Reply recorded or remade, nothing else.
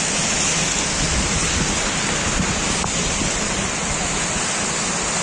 recorded